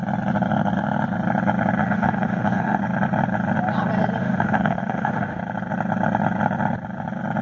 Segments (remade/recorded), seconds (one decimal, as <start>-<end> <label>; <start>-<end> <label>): 0.0-1.8 recorded; 1.8-2.8 remade; 2.8-4.2 recorded; 4.2-5.4 remade; 5.4-7.4 recorded